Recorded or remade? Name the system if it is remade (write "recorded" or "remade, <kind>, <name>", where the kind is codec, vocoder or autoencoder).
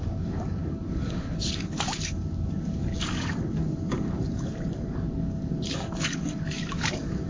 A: remade, codec, DAC